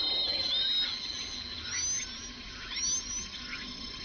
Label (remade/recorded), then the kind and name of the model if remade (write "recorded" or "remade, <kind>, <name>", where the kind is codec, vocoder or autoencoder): recorded